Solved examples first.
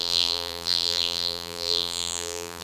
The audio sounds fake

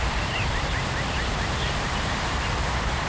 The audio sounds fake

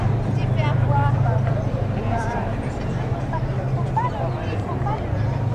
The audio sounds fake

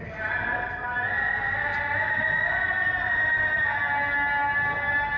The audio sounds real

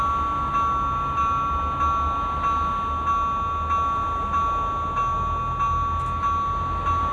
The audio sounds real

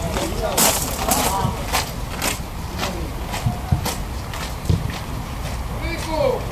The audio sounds real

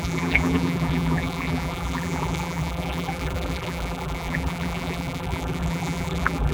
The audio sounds fake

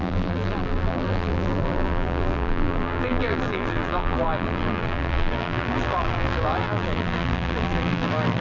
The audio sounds fake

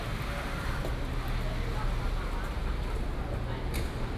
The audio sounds real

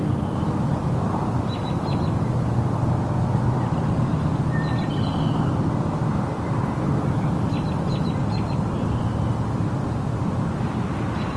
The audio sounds fake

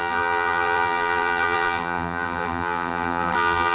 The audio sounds fake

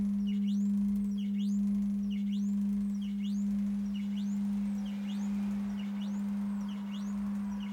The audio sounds real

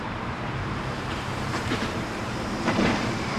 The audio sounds fake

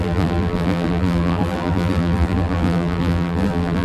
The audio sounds fake